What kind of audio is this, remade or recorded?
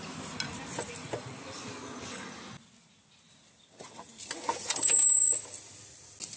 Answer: recorded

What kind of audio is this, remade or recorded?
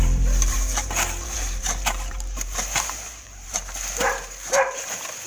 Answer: remade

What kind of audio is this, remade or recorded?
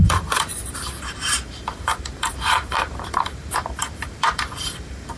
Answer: remade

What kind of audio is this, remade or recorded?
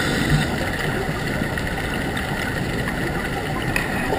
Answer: recorded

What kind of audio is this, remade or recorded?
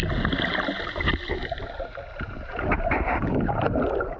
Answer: recorded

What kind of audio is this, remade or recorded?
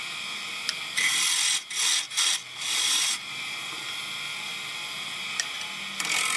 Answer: recorded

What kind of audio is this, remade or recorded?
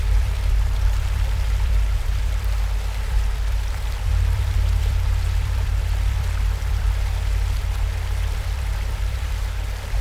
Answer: remade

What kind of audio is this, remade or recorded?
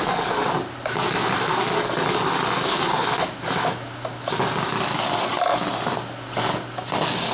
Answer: recorded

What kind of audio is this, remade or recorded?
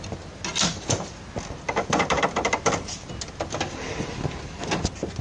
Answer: recorded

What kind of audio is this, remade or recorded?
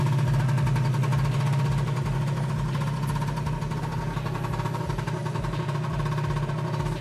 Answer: recorded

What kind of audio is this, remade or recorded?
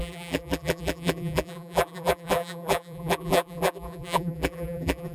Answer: remade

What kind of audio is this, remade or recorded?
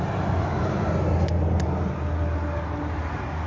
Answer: recorded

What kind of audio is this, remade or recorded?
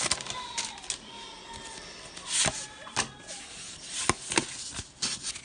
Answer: recorded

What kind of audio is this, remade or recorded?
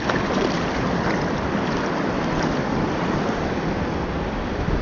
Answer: remade